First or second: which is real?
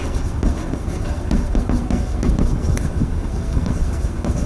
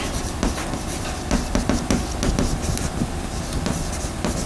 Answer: second